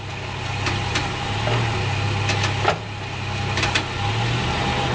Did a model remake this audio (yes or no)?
no